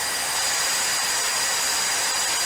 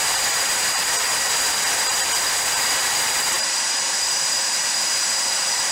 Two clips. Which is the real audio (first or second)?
first